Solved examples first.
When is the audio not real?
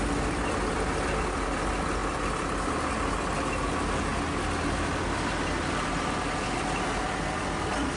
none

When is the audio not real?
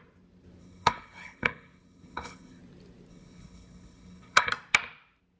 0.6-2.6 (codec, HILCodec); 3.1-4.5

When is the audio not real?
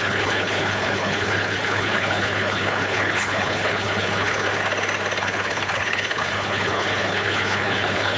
0.0-4.5 (codec, HILCodec); 5.2-8.2